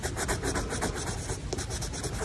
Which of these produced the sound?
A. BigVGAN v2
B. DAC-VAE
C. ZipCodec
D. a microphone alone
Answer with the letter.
D